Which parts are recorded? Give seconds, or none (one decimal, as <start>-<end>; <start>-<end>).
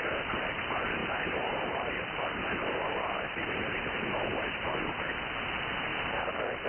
0.0-1.0; 5.0-5.9